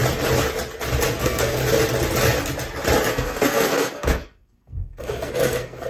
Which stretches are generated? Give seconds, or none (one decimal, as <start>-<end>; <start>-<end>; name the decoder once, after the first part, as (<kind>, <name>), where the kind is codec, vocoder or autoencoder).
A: 1.2-1.6 (codec, SNAC); 3.1-5.9

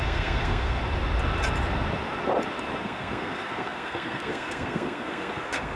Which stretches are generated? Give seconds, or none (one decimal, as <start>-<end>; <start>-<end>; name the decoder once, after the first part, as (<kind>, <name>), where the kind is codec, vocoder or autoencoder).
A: 0.0-0.8 (codec, SNAC); 2.8-5.8

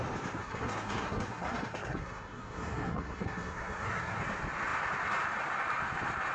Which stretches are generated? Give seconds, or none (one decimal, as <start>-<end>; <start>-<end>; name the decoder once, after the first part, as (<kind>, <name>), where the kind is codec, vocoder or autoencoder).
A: 0.4-4.2 (codec, SNAC)

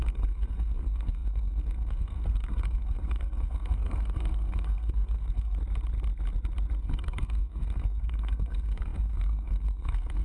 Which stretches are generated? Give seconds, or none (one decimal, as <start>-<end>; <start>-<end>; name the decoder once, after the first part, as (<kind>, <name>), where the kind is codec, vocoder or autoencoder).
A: 0.0-5.6 (codec, SNAC); 6.8-10.2

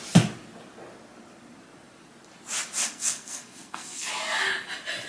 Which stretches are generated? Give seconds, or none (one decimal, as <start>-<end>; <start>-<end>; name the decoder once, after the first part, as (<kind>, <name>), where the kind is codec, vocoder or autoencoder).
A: 2.8-4.1 (codec, SNAC)

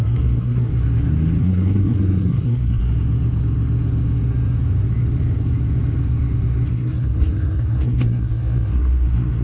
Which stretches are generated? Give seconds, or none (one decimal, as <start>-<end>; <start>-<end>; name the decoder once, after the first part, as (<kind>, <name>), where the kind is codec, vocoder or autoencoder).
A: 0.0-0.7 (codec, SNAC); 1.4-2.8; 6.7-9.4

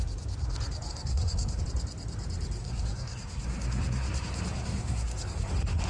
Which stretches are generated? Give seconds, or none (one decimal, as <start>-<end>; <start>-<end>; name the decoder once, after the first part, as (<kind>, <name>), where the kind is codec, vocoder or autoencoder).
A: 0.9-1.6 (codec, SNAC); 2.6-5.5